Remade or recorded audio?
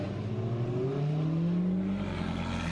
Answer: recorded